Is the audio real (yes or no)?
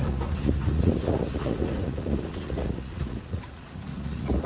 no